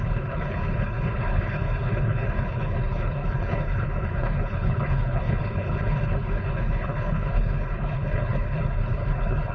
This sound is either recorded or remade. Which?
remade